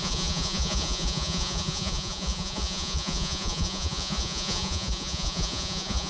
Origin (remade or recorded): remade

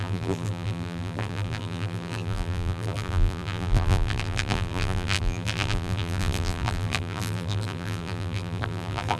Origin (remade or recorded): remade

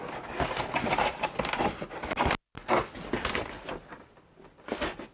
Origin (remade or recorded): recorded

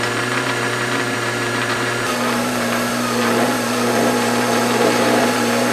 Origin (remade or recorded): remade